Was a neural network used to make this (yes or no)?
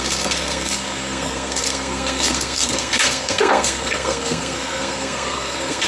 yes